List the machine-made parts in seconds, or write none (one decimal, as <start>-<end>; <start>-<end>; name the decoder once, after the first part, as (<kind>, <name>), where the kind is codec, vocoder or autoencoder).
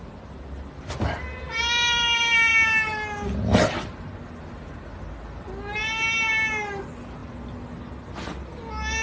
none